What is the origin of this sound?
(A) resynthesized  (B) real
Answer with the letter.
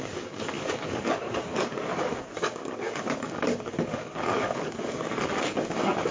A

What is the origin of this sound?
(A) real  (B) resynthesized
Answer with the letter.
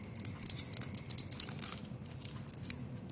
A